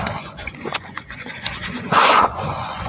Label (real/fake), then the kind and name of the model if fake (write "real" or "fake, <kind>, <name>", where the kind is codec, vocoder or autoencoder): fake, vocoder, Vocos